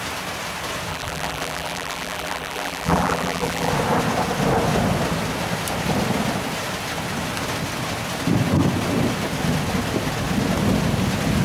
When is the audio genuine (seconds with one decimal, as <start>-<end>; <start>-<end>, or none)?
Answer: 0.0-0.9; 3.7-11.4